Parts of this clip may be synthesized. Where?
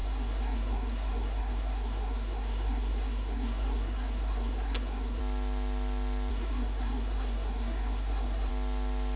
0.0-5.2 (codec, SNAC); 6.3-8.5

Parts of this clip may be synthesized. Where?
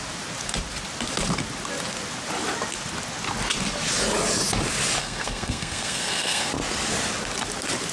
5.0-6.5 (codec, SNAC)